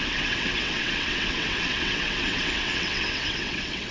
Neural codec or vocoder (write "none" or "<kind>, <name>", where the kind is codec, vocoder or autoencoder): vocoder, WaveNeXt